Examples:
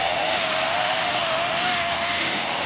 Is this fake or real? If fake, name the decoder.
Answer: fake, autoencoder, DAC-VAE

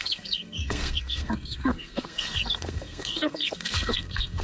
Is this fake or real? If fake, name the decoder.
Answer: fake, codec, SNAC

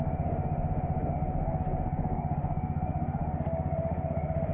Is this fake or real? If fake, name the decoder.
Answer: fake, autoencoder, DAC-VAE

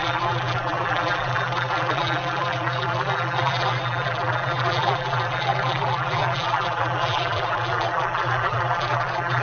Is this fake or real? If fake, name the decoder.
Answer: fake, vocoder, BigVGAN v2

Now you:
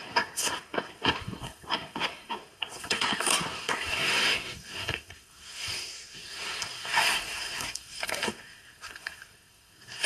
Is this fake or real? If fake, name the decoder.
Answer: fake, codec, SNAC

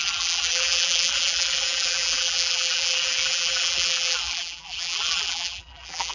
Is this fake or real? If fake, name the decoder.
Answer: fake, vocoder, BigVGAN v2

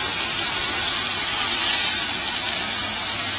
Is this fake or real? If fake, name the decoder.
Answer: real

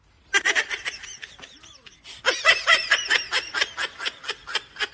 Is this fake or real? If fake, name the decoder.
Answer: real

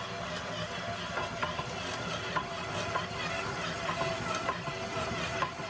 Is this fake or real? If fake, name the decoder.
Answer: real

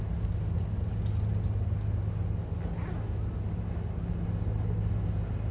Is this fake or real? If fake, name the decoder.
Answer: real